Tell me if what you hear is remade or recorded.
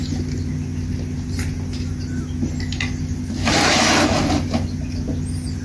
recorded